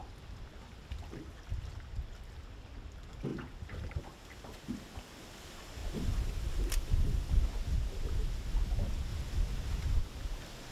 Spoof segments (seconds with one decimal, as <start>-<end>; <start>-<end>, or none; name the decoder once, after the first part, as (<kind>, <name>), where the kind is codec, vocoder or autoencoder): 0.0-1.7 (vocoder, BigVGAN v2); 5.8-7.4; 9.1-10.0